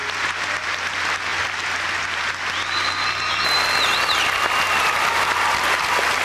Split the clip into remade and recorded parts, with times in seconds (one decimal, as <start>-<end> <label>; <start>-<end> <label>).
0.0-6.2 recorded